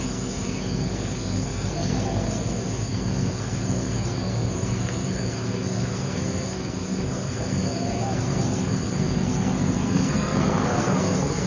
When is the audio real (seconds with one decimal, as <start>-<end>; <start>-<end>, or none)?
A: none